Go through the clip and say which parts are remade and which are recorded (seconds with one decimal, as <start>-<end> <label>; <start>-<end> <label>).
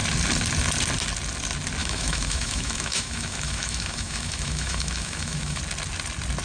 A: 0.0-1.8 recorded; 1.8-5.6 remade; 5.6-6.4 recorded